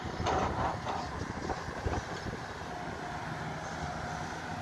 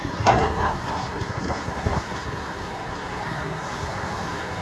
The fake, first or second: second